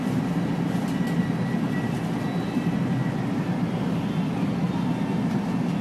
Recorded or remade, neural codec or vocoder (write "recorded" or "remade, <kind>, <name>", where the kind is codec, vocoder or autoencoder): recorded